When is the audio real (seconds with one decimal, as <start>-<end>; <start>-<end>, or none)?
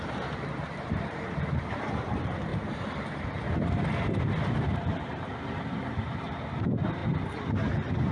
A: 2.5-5.0; 7.0-8.1